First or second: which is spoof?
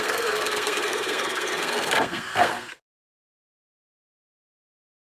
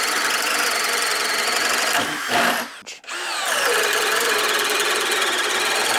first